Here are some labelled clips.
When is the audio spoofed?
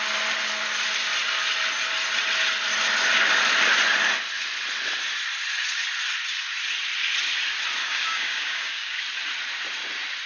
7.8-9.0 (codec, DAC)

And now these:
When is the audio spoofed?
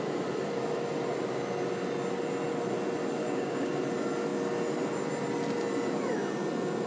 3.2-3.7 (codec, DAC)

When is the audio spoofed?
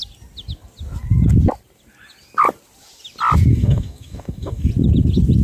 3.5-4.7 (codec, DAC)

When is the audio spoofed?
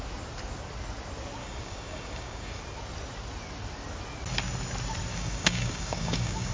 1.4-2.6 (codec, DAC); 5.1-6.5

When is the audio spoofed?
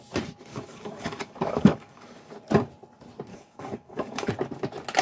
0.5-2.3 (codec, DAC); 3.3-4.3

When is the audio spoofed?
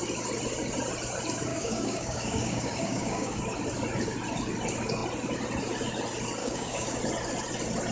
1.5-3.4 (codec, DAC); 6.4-7.0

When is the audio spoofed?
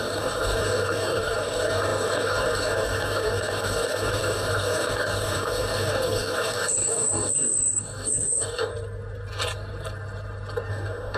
0.0-8.7 (codec, DAC); 10.7-11.2